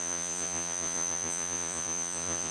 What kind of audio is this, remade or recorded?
remade